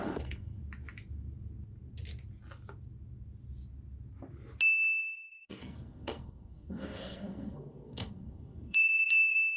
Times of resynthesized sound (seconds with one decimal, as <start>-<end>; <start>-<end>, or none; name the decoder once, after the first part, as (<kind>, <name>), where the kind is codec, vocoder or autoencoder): 0.0-0.6 (codec, SNAC); 5.0-9.6